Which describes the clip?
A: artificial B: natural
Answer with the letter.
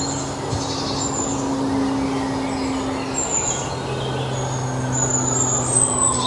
B